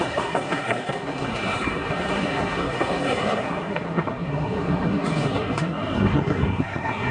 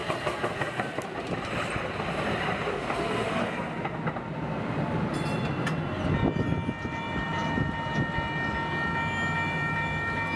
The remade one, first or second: first